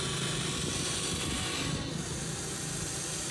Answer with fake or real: real